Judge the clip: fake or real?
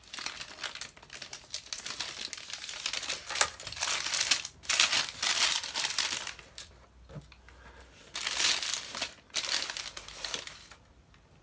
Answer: real